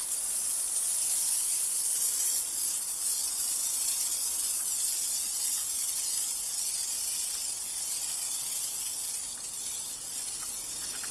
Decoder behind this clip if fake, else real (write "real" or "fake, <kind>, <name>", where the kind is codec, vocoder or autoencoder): real